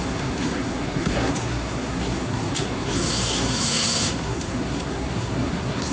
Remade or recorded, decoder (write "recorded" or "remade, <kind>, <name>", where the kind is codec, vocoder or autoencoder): remade, codec, SNAC